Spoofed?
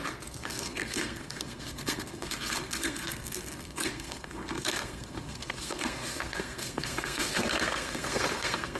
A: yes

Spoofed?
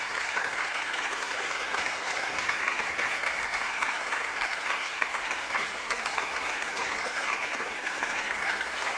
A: yes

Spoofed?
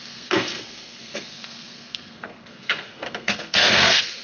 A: yes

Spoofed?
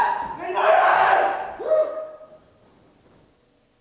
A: no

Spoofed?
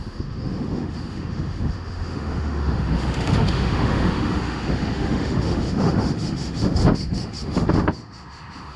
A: yes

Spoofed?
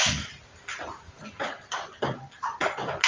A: no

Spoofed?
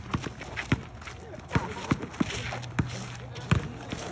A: no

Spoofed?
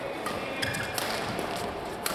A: no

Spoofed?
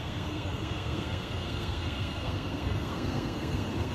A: yes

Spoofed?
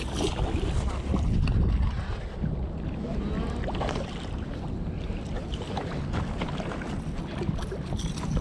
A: no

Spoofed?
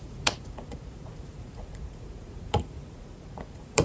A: yes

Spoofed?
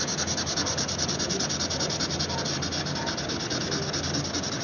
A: no